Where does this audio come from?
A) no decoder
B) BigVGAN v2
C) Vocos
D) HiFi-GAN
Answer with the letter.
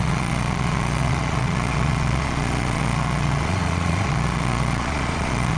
C